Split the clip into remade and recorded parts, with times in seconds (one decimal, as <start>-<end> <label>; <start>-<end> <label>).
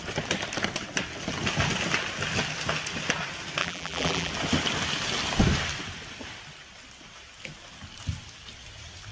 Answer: 0.0-3.6 recorded; 3.6-4.3 remade; 4.3-9.1 recorded